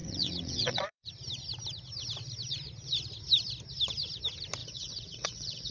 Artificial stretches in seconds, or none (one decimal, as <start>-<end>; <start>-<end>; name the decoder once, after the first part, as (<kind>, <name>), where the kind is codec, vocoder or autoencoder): 0.0-1.1 (vocoder, WaveNeXt); 4.6-5.7

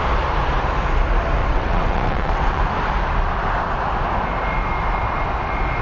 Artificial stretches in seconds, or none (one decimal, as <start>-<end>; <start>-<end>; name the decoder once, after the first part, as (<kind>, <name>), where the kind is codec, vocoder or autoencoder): 1.4-2.6 (vocoder, WaveNeXt)

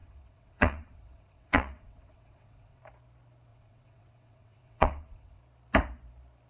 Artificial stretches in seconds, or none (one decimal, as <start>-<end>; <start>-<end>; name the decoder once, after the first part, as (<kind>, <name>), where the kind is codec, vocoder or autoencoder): 0.0-2.8 (vocoder, WaveNeXt); 3.5-5.4

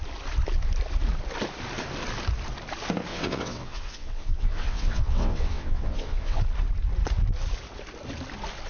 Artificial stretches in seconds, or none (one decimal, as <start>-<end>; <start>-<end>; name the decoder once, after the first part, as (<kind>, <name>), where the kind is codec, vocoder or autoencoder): 3.1-6.4 (vocoder, WaveNeXt)

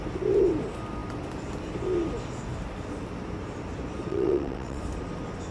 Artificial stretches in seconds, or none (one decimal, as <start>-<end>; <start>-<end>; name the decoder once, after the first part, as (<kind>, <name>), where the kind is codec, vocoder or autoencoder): 4.1-4.8 (vocoder, WaveNeXt)